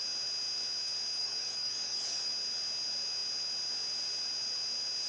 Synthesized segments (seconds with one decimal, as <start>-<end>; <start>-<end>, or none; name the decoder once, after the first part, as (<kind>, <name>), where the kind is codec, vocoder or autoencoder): 1.2-2.3 (codec, DAC)